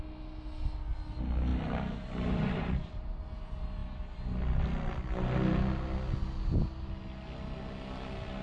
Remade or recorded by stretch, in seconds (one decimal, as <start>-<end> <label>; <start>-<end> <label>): 0.0-1.5 recorded; 1.5-3.2 remade; 3.2-8.4 recorded